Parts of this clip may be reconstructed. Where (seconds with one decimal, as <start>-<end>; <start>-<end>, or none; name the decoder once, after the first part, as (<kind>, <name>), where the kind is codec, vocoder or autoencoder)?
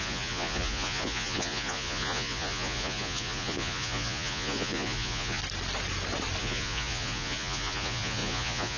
0.0-5.4 (vocoder, Vocos); 6.4-8.8